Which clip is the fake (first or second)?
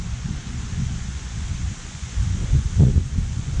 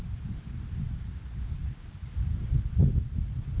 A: first